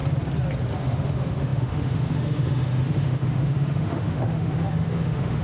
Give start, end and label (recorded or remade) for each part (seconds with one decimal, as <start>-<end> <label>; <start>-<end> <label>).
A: 0.0-0.8 recorded; 0.8-5.4 remade